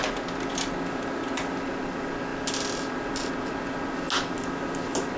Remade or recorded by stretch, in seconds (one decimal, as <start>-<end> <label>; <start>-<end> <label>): 0.0-5.2 recorded